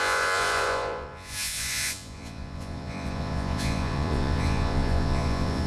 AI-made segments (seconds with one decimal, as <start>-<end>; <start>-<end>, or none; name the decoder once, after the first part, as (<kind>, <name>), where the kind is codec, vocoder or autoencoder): 0.0-5.7 (vocoder, Vocos)